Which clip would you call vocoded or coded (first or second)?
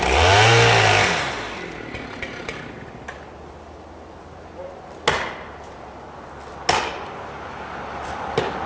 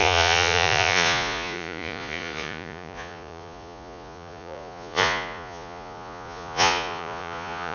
second